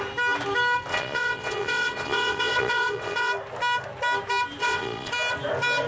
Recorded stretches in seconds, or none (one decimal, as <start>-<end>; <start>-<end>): 0.0-0.9; 3.3-4.6; 5.1-5.9

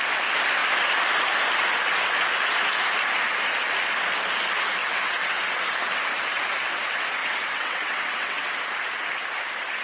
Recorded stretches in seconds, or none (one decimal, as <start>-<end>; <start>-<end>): 0.0-4.8; 5.4-7.2; 8.5-9.8